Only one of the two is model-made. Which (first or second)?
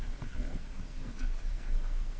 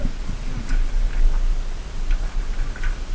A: first